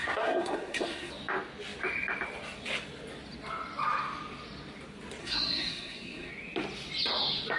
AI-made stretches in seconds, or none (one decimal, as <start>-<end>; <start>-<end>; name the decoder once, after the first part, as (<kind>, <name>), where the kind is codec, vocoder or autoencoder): 0.0-1.1 (codec, SNAC); 5.2-6.3